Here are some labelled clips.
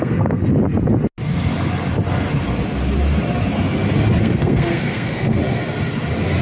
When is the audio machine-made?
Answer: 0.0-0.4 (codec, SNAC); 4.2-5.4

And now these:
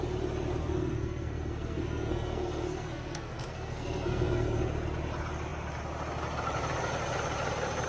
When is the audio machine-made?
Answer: 0.6-4.6 (codec, SNAC)

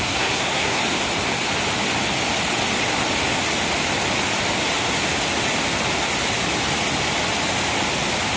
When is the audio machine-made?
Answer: 0.0-0.8 (codec, SNAC)